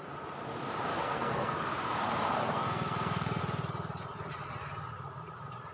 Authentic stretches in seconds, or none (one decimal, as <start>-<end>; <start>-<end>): 0.0-0.9; 1.6-2.4; 3.4-5.7